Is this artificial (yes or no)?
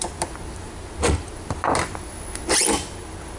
no